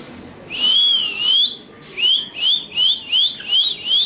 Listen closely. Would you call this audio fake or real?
real